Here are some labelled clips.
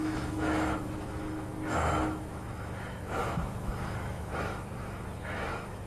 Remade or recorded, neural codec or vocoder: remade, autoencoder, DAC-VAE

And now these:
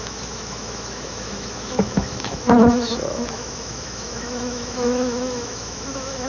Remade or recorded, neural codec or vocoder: remade, autoencoder, DAC-VAE